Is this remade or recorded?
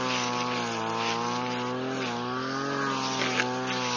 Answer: recorded